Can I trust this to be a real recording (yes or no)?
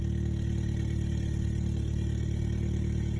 yes